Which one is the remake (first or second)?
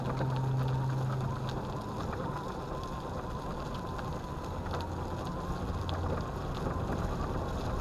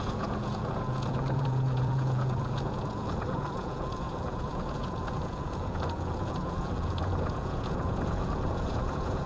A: second